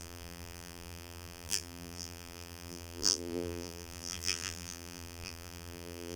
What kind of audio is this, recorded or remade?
remade